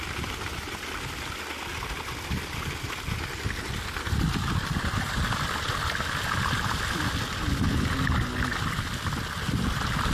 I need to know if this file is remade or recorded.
recorded